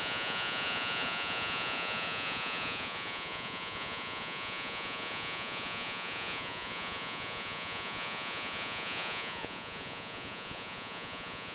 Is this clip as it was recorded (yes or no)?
no